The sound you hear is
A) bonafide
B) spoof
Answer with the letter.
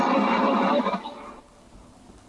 A